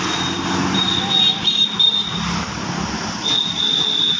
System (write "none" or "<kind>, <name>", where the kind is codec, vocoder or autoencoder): none